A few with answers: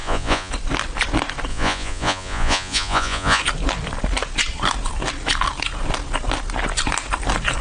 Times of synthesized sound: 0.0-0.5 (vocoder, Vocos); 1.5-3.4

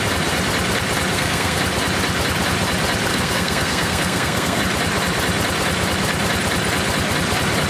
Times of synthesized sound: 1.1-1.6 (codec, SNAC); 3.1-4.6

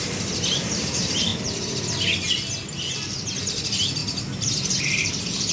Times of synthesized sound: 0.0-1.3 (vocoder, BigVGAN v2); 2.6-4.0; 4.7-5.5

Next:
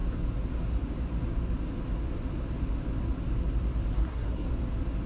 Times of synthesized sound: 3.9-4.5 (codec, SNAC)

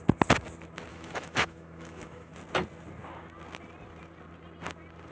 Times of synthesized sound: 0.9-2.3 (autoencoder, DAC-VAE)